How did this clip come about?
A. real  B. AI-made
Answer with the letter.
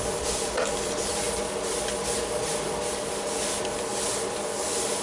A